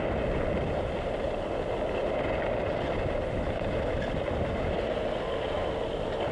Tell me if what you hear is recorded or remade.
recorded